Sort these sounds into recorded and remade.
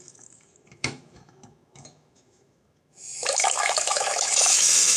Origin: remade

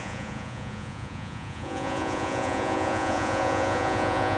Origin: remade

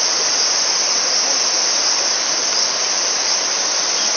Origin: recorded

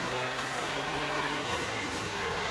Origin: remade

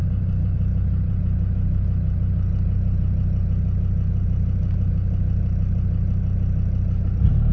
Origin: recorded